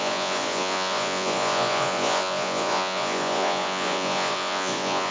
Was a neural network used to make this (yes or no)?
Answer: yes